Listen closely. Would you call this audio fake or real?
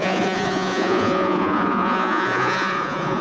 fake